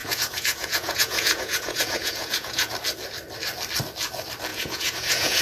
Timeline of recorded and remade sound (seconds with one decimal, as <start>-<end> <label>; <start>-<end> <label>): 0.0-2.7 remade; 2.7-4.5 recorded; 4.5-5.4 remade